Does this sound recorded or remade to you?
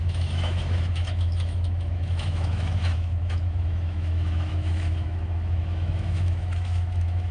remade